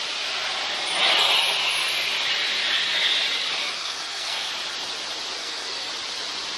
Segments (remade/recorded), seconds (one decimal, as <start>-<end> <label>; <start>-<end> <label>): 0.0-3.6 recorded; 3.6-4.5 remade; 4.5-5.4 recorded; 5.4-5.9 remade; 5.9-6.6 recorded

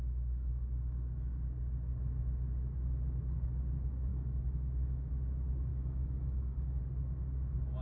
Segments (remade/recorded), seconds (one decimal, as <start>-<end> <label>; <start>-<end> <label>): 0.0-4.1 recorded; 4.1-5.1 remade; 5.1-5.7 recorded; 5.7-6.8 remade; 6.8-7.8 recorded

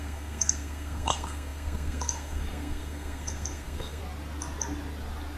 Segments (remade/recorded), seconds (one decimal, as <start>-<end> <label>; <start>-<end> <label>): 0.0-4.0 remade; 4.0-5.4 recorded

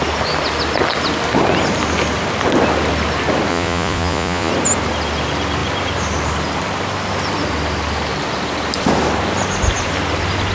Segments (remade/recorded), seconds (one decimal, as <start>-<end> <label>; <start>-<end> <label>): 0.0-3.5 recorded; 3.5-4.5 remade; 4.5-10.5 recorded